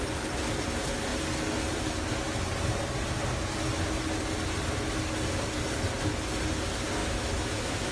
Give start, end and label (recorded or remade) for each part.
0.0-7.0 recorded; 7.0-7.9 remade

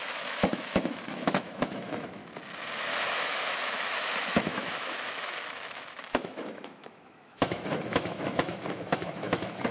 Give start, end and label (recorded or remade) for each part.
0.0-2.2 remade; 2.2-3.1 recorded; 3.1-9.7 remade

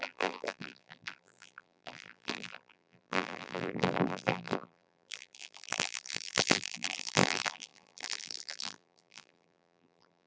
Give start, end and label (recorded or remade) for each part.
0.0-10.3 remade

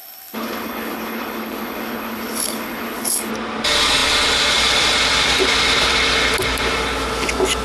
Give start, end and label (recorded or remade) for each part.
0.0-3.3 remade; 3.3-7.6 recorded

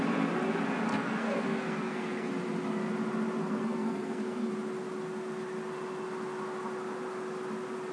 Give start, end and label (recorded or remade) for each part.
0.0-0.9 recorded; 0.9-2.3 remade; 2.3-3.4 recorded; 3.4-4.5 remade; 4.5-7.9 recorded

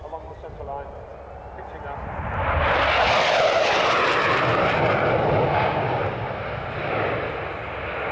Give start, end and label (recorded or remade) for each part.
0.0-5.5 recorded; 5.5-6.0 remade; 6.0-8.1 recorded

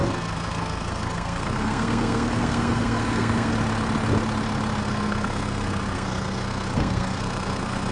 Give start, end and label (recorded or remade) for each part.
0.0-3.5 remade; 3.5-4.8 recorded; 4.8-7.9 remade

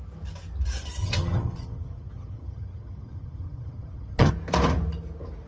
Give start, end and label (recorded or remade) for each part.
0.0-1.0 recorded; 1.0-4.3 remade; 4.3-5.5 recorded